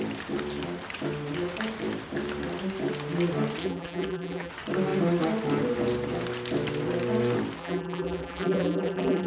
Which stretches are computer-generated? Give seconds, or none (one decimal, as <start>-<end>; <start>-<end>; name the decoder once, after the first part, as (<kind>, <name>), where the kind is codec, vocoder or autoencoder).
3.6-4.5 (vocoder, BigVGAN v2); 7.6-9.3